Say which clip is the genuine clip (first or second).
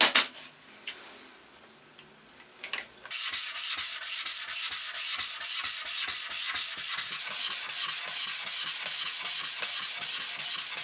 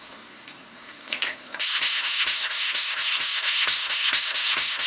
first